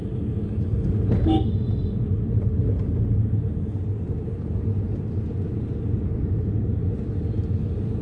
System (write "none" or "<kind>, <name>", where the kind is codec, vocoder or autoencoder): none